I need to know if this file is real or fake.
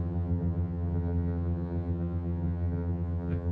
fake